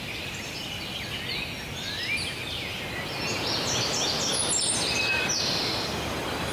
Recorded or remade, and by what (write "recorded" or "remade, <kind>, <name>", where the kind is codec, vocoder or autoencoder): recorded